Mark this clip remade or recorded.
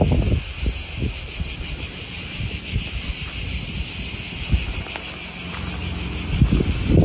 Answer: recorded